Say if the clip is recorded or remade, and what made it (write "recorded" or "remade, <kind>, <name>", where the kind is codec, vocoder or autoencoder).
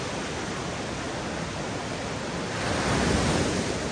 recorded